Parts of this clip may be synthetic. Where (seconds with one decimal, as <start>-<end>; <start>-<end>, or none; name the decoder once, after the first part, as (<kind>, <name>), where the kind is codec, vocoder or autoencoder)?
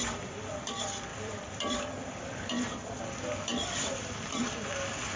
1.1-3.0 (vocoder, BigVGAN v2); 3.5-4.4